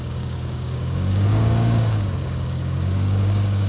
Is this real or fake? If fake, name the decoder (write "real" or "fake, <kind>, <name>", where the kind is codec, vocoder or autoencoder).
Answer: fake, codec, DAC